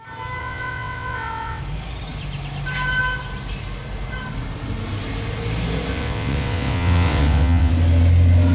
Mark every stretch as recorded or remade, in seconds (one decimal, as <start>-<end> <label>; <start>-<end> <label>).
0.0-0.4 recorded; 0.4-1.6 remade; 1.6-5.9 recorded; 5.9-7.7 remade; 7.7-8.5 recorded

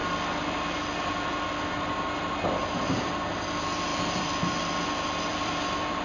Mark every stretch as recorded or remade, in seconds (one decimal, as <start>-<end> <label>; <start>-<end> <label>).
0.0-2.6 recorded; 2.6-3.2 remade; 3.2-3.9 recorded; 3.9-4.5 remade; 4.5-5.3 recorded; 5.3-6.0 remade

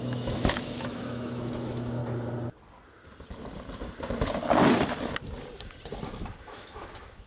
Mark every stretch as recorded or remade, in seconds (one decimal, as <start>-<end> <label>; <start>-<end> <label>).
0.0-2.0 remade; 2.0-6.4 recorded; 6.4-7.3 remade

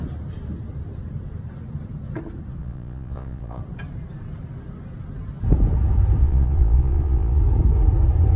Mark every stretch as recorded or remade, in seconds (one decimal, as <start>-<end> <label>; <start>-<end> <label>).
0.0-2.6 recorded; 2.6-3.6 remade; 3.6-6.2 recorded; 6.2-7.4 remade; 7.4-8.4 recorded

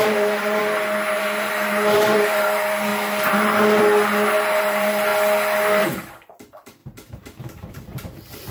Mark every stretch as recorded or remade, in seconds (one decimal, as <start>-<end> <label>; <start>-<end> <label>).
0.0-0.6 remade; 0.6-1.1 recorded; 1.1-2.9 remade; 2.9-4.6 recorded; 4.6-5.1 remade; 5.1-5.8 recorded; 5.8-8.5 remade

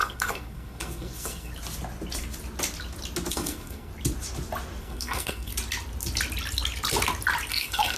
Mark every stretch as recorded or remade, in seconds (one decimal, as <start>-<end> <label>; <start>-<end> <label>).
0.0-1.5 remade; 1.5-3.3 recorded; 3.3-3.9 remade; 3.9-4.8 recorded; 4.8-5.5 remade; 5.5-7.5 recorded; 7.5-8.0 remade

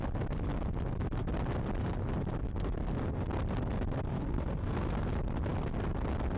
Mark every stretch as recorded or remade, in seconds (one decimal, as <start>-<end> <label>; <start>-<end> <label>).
0.0-4.1 recorded; 4.1-4.9 remade; 4.9-6.4 recorded

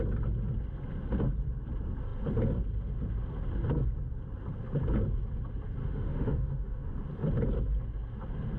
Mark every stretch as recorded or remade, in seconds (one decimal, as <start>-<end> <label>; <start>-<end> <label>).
0.0-5.8 recorded; 5.8-6.9 remade; 6.9-8.6 recorded